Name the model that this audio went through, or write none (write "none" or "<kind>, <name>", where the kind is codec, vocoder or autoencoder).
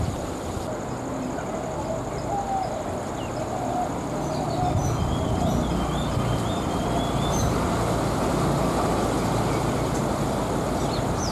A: none